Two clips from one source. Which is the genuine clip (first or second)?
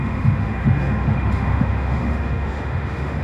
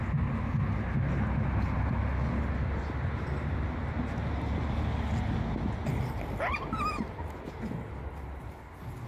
second